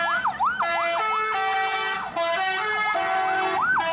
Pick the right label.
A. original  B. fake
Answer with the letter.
A